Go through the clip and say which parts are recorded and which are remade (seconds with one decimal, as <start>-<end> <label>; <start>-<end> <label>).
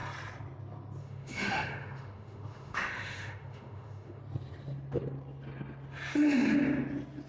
0.0-1.0 recorded; 1.0-4.2 remade; 4.2-7.3 recorded